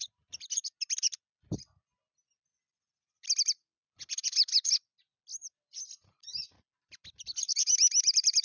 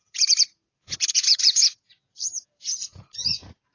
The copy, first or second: second